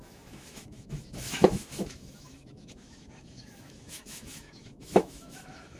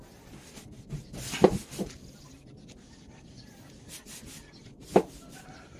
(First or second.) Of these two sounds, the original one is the second